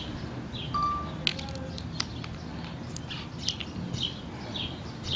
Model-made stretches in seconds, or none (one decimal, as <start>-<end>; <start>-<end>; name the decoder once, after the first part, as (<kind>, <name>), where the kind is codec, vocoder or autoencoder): none